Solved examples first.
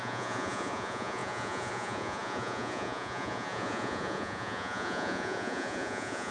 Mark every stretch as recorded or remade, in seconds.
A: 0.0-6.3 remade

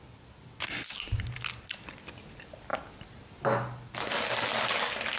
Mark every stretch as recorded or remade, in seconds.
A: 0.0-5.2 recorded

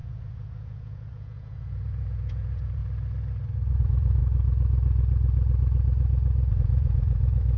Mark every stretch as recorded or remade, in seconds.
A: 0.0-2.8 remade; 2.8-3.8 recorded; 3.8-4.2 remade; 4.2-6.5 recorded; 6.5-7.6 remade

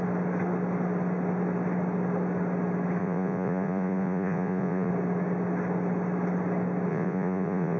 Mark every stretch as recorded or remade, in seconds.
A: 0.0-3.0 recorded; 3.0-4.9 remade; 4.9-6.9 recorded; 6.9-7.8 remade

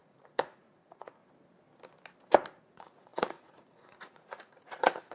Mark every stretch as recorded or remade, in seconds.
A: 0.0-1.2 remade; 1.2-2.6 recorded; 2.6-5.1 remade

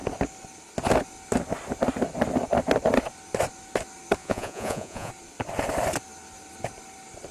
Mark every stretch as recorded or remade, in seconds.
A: 0.0-4.2 recorded; 4.2-5.1 remade; 5.1-7.3 recorded

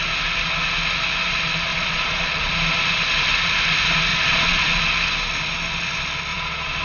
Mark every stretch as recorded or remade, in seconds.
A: 0.0-1.7 recorded; 1.7-2.5 remade; 2.5-4.1 recorded; 4.1-4.8 remade; 4.8-6.3 recorded; 6.3-6.8 remade

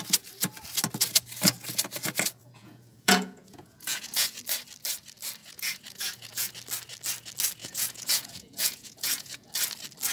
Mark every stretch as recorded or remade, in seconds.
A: 0.0-2.4 recorded; 2.4-4.4 remade; 4.4-5.4 recorded; 5.4-6.5 remade; 6.5-7.6 recorded; 7.6-9.5 remade; 9.5-10.1 recorded